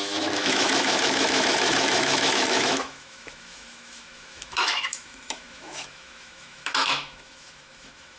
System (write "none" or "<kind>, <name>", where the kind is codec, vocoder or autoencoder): autoencoder, DAC-VAE